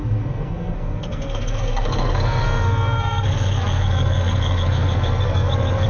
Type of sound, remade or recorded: remade